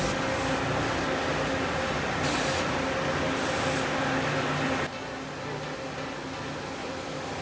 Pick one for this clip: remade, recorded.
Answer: recorded